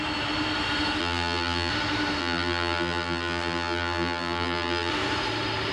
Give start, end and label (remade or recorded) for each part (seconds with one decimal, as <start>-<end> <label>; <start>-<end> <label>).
0.0-1.0 recorded; 1.0-1.7 remade; 1.7-2.2 recorded; 2.2-4.9 remade; 4.9-5.7 recorded